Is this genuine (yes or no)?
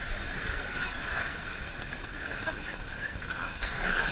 no